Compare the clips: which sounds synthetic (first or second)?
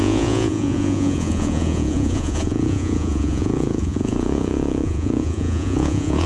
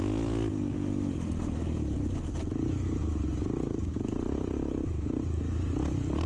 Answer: first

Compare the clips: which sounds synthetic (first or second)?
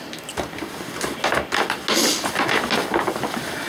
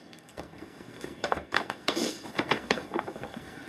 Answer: second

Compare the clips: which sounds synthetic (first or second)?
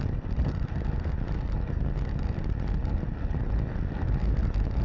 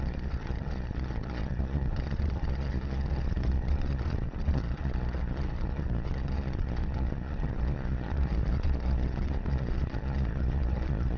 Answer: second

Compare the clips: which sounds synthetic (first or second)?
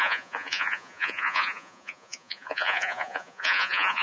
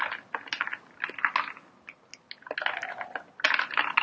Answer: first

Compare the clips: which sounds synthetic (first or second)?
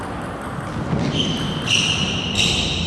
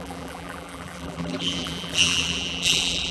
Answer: second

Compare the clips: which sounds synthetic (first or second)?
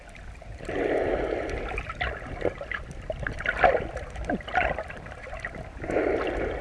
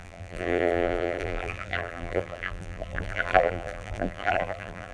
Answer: second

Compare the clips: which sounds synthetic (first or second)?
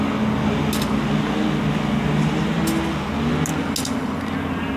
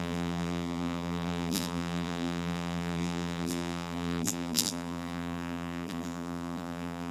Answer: second